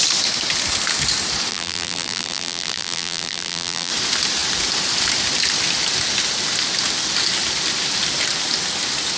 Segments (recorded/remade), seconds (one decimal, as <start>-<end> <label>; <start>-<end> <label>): 0.0-1.5 recorded; 1.5-3.9 remade; 3.9-9.2 recorded